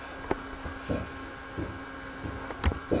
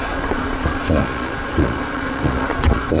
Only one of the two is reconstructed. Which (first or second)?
second